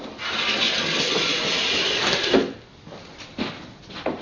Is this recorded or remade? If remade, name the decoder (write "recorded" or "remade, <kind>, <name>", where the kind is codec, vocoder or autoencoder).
recorded